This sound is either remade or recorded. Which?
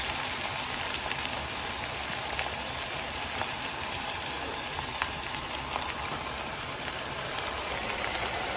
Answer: remade